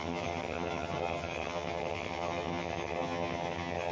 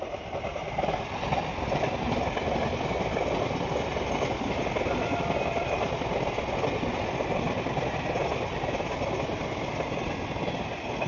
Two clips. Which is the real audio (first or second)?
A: second